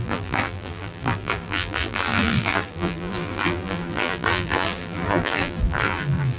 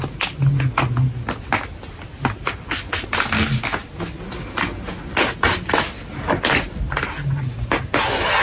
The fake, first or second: first